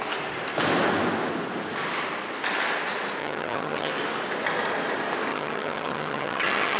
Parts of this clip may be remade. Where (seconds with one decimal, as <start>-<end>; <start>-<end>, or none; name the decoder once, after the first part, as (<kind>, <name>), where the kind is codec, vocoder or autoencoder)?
3.2-3.9 (vocoder, HiFi-GAN); 5.3-6.8